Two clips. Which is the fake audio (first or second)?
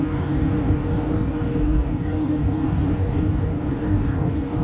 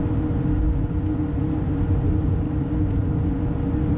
first